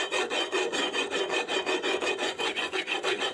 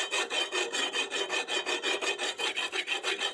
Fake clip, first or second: first